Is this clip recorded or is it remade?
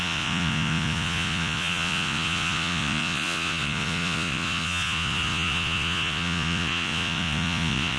remade